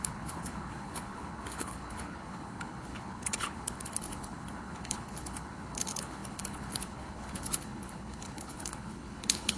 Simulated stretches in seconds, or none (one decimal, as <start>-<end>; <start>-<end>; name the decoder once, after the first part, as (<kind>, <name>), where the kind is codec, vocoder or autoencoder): 0.0-9.6 (codec, HILCodec)